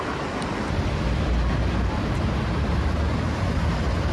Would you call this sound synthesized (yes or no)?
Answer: no